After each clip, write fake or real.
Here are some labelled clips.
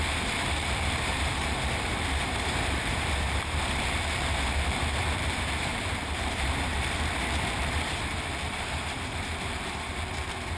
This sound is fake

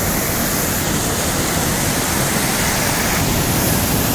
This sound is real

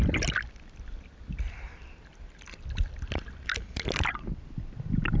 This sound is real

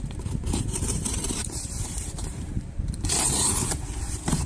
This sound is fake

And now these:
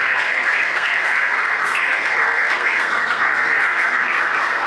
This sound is fake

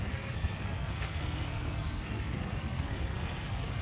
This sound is fake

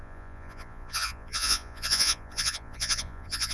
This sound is fake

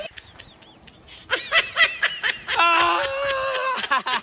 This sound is real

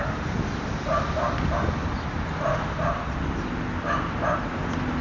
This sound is real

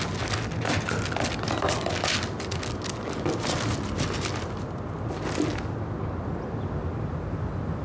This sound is real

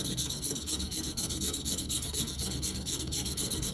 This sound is fake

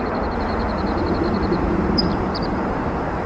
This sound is fake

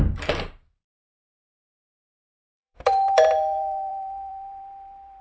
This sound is fake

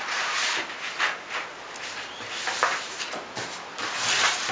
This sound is real